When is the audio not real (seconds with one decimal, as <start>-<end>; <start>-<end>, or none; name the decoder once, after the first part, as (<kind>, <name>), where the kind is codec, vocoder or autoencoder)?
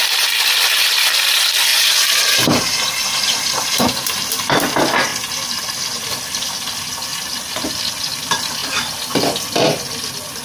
1.7-4.2 (vocoder, BigVGAN v2); 7.1-7.7